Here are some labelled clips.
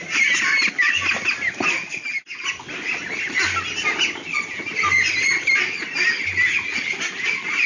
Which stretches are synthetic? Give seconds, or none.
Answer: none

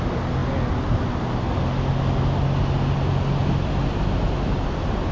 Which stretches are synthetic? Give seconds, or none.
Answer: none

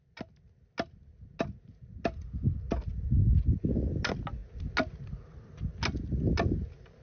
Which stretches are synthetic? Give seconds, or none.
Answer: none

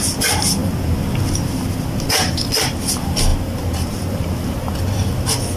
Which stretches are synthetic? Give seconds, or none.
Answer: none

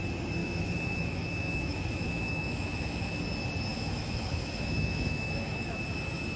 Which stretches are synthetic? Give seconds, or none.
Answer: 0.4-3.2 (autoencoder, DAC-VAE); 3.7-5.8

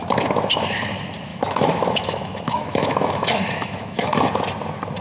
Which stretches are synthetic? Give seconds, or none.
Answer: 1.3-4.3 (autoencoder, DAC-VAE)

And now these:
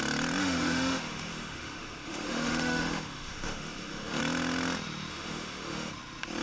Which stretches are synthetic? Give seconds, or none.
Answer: 0.4-4.2 (autoencoder, DAC-VAE); 5.1-5.9